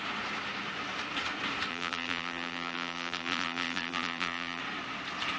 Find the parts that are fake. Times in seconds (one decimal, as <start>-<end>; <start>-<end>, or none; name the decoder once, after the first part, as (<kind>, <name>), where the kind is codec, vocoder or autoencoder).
1.7-4.6 (vocoder, BigVGAN v2)